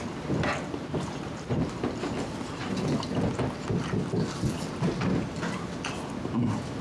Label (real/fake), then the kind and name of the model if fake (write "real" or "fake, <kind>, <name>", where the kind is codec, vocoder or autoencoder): real